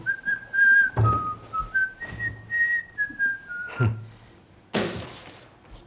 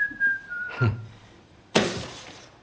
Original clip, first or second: first